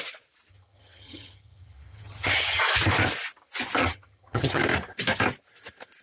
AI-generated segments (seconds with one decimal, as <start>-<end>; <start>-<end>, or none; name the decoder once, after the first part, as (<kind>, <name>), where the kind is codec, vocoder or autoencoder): 0.5-2.6 (vocoder, HiFi-GAN); 3.8-4.6